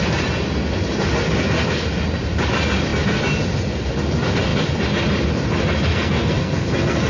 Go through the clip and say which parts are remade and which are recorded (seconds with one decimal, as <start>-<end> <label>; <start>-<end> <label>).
0.0-5.9 recorded; 5.9-7.1 remade